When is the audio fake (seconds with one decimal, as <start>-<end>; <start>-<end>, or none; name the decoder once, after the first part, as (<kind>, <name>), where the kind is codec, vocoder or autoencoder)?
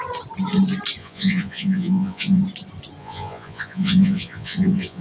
1.0-2.4 (vocoder, Vocos); 3.0-5.0